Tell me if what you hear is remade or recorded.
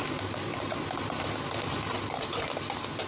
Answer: recorded